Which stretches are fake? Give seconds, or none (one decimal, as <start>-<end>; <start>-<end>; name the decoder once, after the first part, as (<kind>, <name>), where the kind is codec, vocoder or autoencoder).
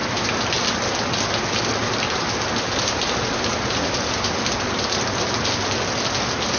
none